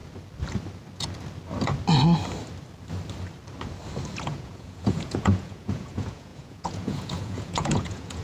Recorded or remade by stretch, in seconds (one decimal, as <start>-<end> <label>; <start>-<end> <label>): 0.0-4.2 recorded; 4.2-8.2 remade

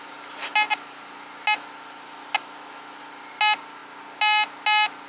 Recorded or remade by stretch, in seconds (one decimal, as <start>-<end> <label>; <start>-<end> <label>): 0.0-5.1 recorded

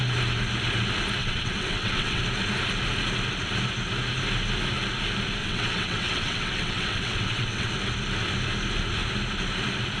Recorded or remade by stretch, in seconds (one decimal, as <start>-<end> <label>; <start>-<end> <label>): 0.0-1.2 recorded; 1.2-2.2 remade; 2.2-5.4 recorded; 5.4-7.7 remade; 7.7-10.0 recorded

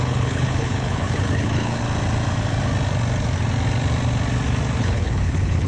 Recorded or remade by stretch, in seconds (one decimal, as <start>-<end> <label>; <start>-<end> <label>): 0.0-1.8 remade; 1.8-4.8 recorded; 4.8-5.7 remade

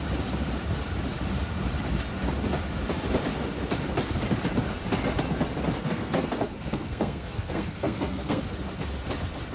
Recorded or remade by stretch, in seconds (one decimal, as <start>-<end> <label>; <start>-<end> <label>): 0.0-5.8 recorded; 5.8-8.4 remade; 8.4-9.5 recorded

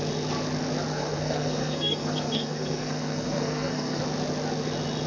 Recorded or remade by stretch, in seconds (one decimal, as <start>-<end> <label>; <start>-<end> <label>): 0.0-0.9 recorded; 0.9-4.0 remade; 4.0-5.1 recorded